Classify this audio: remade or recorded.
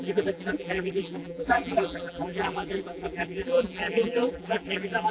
remade